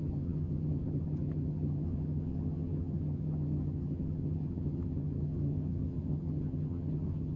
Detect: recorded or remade remade